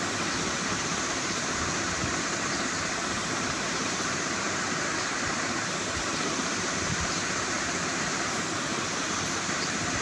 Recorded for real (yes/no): no